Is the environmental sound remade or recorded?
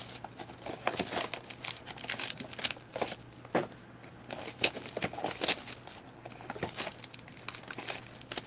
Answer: recorded